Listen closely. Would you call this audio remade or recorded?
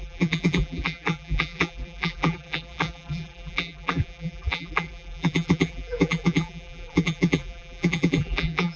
remade